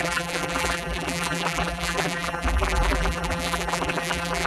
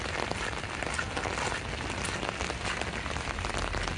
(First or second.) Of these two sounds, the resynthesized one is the first